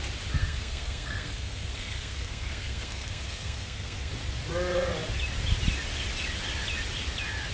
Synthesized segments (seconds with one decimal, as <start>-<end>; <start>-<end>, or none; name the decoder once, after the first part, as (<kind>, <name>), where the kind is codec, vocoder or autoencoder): 0.4-4.1 (codec, SNAC)